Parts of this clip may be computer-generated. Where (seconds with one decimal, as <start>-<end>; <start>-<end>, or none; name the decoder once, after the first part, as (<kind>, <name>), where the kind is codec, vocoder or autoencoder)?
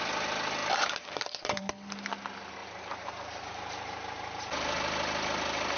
0.6-1.7 (vocoder, BigVGAN v2); 2.6-3.5